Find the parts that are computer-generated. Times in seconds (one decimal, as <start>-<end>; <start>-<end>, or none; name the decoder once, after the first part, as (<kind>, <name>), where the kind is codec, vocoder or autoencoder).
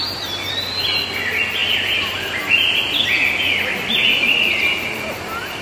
1.6-3.0 (vocoder, BigVGAN v2)